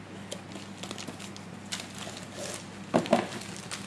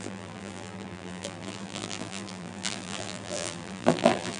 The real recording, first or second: first